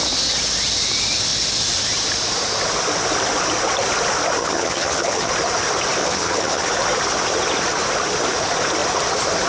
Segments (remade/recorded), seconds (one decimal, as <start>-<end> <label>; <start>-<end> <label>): 0.0-4.4 recorded; 4.4-5.3 remade; 5.3-6.0 recorded; 6.0-6.7 remade; 6.7-9.5 recorded